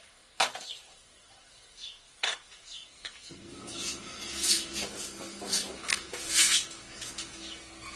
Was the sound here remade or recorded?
remade